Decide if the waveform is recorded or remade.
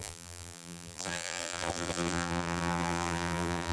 remade